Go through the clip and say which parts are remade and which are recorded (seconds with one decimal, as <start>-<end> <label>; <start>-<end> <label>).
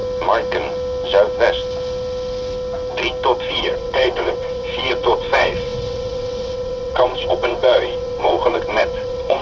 0.0-3.5 recorded; 3.5-9.4 remade